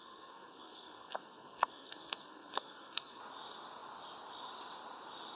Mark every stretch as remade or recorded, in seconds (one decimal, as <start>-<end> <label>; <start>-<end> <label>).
0.0-3.2 remade; 3.2-5.4 recorded